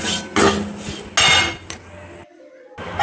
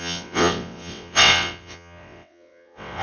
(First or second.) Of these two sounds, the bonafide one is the first